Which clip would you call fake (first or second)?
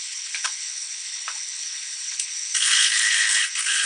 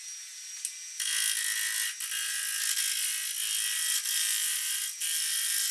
first